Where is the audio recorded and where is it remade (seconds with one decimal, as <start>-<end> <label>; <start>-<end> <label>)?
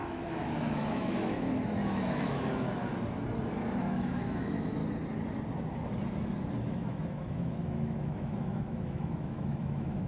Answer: 0.0-2.8 remade; 2.8-3.8 recorded; 3.8-4.8 remade; 4.8-6.6 recorded; 6.6-10.1 remade